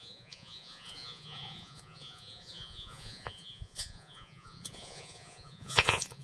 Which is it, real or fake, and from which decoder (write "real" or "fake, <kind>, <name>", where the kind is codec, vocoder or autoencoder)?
fake, vocoder, Vocos